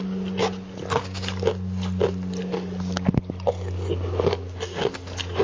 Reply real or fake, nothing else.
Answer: real